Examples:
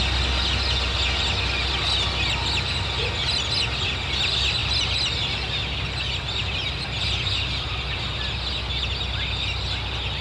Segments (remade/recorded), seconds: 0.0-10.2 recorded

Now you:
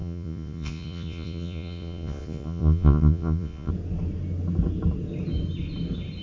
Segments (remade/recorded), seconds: 0.0-3.7 remade; 3.7-6.2 recorded

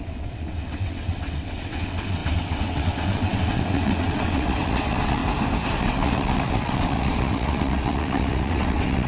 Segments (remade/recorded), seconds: 0.0-5.2 remade; 5.2-5.8 recorded; 5.8-9.1 remade

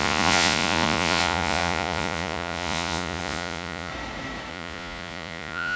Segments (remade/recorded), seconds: 0.0-3.9 remade; 3.9-4.5 recorded; 4.5-5.8 remade

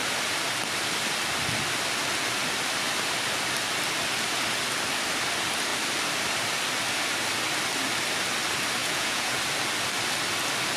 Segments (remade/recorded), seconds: 0.0-8.8 recorded; 8.8-9.4 remade; 9.4-10.8 recorded